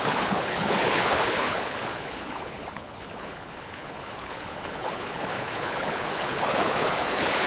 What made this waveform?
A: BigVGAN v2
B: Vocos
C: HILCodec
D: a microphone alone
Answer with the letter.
C